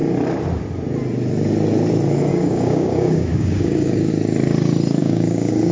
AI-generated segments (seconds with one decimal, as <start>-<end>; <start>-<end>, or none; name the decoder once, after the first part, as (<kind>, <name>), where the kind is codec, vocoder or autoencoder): 2.3-4.1 (codec, DAC); 5.0-5.7